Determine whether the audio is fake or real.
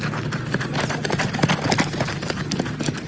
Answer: real